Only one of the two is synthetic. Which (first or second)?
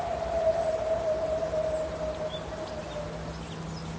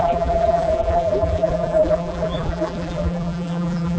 second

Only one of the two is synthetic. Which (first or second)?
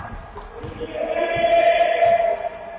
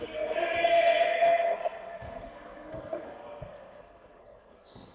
second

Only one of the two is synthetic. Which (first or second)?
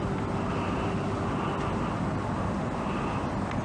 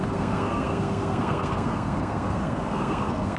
second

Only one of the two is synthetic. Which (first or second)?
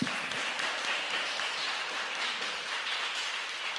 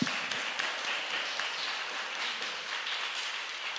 first